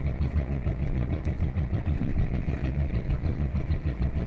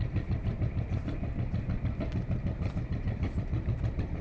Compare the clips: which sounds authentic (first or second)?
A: second